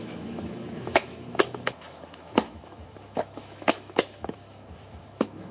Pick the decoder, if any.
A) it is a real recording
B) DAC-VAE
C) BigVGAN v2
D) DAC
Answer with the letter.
B